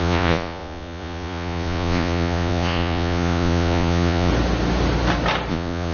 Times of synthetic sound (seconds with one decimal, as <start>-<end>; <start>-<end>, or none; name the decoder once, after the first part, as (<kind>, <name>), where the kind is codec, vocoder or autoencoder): 0.0-4.3 (vocoder, Vocos); 5.5-5.9